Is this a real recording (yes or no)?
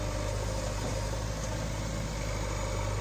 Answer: yes